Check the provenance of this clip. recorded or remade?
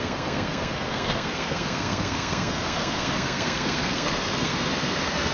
remade